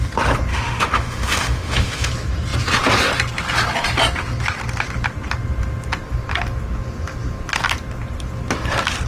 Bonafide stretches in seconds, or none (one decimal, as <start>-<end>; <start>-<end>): 0.0-0.5; 2.1-9.1